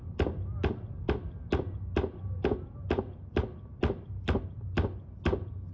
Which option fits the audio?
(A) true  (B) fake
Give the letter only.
A